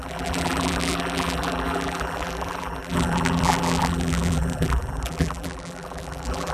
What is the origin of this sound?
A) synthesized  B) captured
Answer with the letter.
A